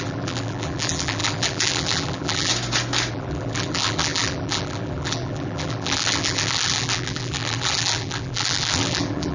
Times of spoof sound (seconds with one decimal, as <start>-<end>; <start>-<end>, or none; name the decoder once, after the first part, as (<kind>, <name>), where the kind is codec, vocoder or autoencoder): 0.0-2.5 (vocoder, BigVGAN v2); 3.1-9.3